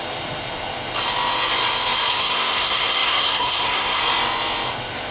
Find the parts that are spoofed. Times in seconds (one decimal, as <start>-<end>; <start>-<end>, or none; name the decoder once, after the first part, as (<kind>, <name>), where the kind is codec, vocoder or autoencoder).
2.1-4.0 (codec, SNAC)